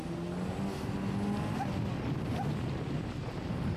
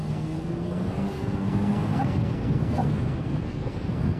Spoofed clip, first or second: second